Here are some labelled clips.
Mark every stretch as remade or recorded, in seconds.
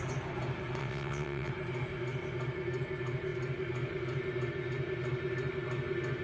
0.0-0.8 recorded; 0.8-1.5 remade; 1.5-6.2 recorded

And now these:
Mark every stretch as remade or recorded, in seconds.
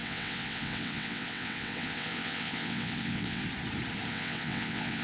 0.0-3.4 remade; 3.4-4.1 recorded; 4.1-5.0 remade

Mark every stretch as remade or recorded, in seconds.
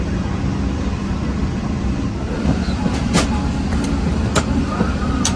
0.0-5.4 recorded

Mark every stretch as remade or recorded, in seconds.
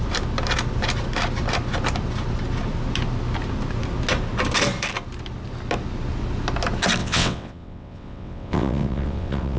0.0-7.0 recorded; 7.0-9.6 remade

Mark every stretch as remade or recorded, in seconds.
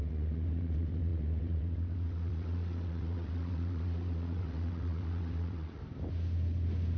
0.0-5.8 remade; 5.8-7.0 recorded